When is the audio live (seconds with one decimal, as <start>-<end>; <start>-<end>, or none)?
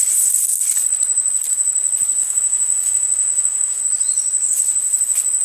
0.0-2.2; 3.8-5.4